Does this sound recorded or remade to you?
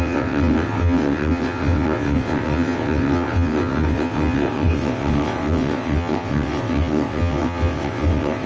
remade